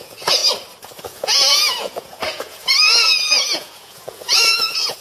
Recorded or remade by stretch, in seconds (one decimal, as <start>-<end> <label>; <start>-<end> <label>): 0.0-0.4 remade; 0.4-1.0 recorded; 1.0-5.0 remade